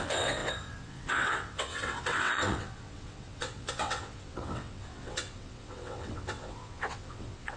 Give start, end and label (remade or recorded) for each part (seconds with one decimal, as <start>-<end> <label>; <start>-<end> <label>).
0.0-7.6 remade